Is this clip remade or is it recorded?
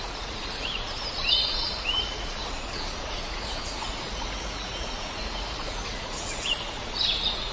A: remade